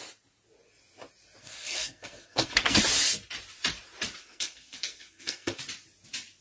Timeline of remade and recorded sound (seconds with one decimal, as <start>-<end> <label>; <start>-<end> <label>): 0.0-1.4 recorded; 1.4-2.8 remade; 2.8-4.2 recorded; 4.2-5.6 remade; 5.6-6.4 recorded